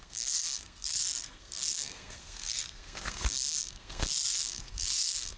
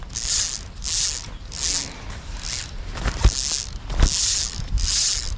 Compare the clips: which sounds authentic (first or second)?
second